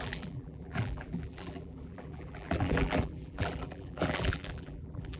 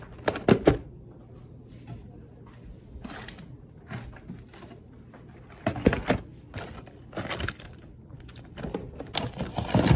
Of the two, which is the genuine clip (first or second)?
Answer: second